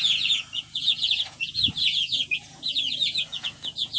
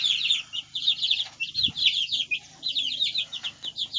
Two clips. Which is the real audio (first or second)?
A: second